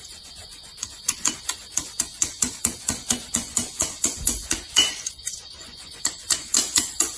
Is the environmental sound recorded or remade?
remade